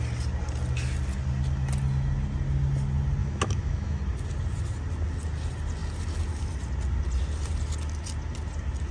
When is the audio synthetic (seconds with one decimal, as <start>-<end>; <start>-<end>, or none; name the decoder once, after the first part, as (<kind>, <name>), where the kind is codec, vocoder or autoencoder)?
3.2-4.0 (autoencoder, DAC-VAE)